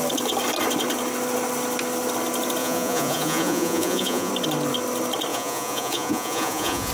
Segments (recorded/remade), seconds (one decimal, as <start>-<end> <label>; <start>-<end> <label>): 0.0-2.6 recorded; 2.6-4.3 remade; 4.3-5.3 recorded; 5.3-6.9 remade